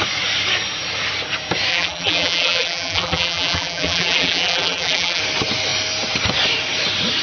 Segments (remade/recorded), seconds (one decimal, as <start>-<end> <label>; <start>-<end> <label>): 0.0-1.7 recorded; 1.7-5.2 remade; 5.2-7.2 recorded